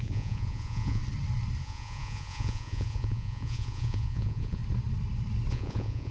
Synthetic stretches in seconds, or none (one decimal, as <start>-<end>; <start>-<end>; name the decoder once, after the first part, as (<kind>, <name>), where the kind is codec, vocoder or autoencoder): 0.0-1.0 (vocoder, Vocos); 1.6-4.6; 5.5-6.1